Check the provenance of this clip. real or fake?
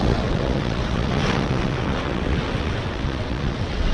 fake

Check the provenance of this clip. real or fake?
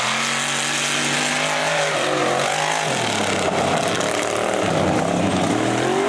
real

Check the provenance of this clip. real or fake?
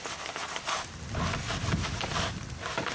real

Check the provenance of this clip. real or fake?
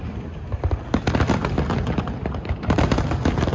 real